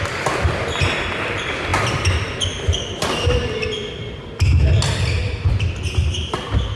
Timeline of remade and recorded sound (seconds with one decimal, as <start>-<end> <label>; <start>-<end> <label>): 0.0-6.8 recorded